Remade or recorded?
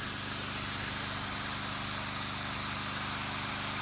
recorded